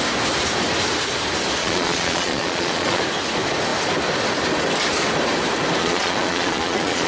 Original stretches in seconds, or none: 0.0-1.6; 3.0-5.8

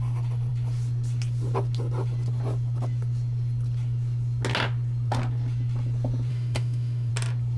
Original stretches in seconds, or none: 0.0-6.3; 7.1-7.6

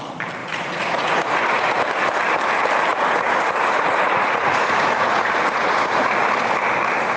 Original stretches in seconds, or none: 0.0-0.4; 1.8-2.9; 6.1-7.2